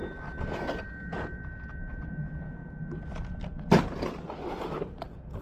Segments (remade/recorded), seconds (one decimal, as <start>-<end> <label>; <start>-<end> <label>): 0.0-0.8 recorded; 0.8-2.6 remade; 2.6-5.0 recorded; 5.0-5.4 remade